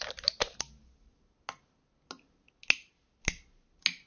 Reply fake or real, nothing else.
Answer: real